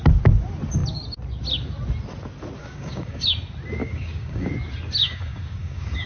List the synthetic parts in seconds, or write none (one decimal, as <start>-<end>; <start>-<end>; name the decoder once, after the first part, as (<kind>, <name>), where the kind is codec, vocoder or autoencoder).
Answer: 2.6-3.3 (codec, DAC); 3.8-4.5; 5.0-6.1